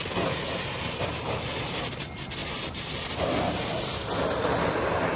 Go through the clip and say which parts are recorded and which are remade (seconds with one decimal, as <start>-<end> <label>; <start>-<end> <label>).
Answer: 0.0-5.2 recorded